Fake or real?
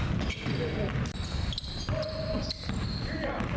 real